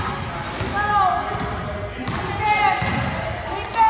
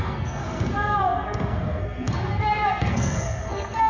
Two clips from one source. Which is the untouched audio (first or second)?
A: first